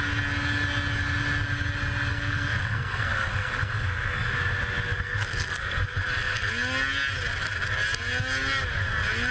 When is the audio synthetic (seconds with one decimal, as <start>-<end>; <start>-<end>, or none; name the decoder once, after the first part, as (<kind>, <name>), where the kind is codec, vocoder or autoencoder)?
2.1-4.3 (codec, SNAC); 4.9-6.5